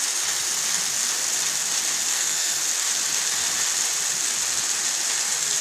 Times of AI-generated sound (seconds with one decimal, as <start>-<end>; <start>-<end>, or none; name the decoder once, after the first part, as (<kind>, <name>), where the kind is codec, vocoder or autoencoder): 2.1-2.6 (codec, SNAC)